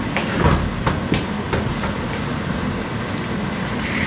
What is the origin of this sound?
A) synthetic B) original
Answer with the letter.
B